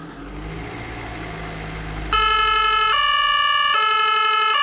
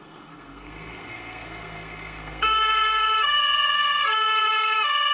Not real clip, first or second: second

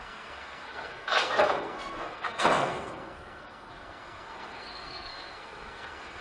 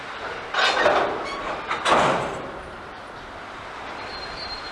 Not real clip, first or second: first